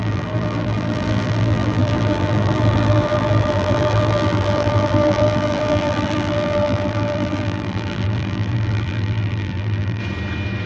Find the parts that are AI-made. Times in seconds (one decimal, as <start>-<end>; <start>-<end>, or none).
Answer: 0.0-10.0